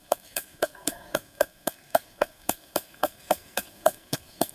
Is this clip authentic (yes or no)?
no